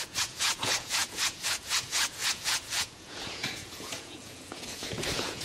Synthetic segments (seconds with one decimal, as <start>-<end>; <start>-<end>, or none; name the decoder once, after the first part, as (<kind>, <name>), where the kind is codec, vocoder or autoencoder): 0.0-5.4 (vocoder, Vocos)